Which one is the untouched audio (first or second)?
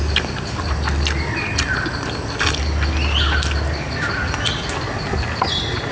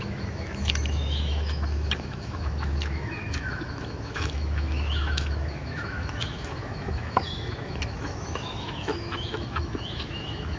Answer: first